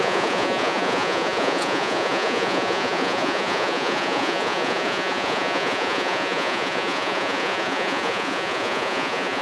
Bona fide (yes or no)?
no